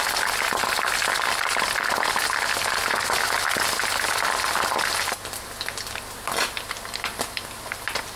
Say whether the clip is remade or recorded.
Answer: recorded